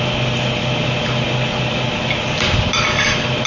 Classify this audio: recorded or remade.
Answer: recorded